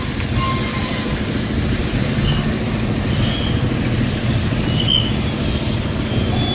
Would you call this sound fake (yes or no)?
no